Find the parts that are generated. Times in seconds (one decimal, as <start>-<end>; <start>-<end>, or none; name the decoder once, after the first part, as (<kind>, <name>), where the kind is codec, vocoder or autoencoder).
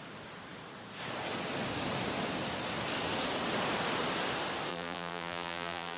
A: 4.7-6.0 (vocoder, BigVGAN v2)